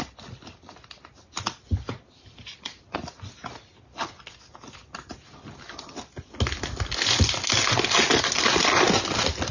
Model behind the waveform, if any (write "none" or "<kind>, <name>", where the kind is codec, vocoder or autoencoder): none